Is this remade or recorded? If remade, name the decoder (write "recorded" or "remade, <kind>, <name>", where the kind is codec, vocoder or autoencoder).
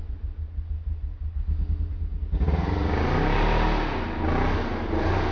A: recorded